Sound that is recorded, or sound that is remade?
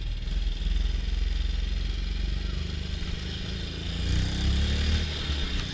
recorded